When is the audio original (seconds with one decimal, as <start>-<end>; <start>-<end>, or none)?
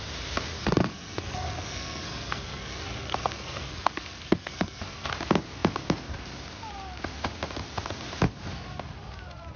0.0-0.6; 5.1-9.6